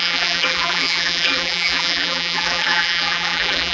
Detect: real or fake fake